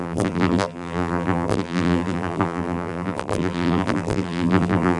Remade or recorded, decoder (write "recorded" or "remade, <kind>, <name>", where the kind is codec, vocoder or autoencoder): remade, vocoder, BigVGAN v2